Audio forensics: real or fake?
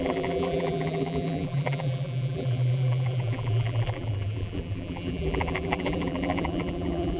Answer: fake